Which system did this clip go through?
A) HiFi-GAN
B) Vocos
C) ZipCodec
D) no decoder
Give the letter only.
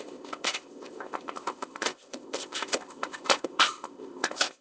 C